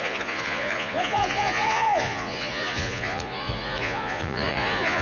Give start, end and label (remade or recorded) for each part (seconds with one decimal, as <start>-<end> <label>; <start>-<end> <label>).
0.0-5.0 remade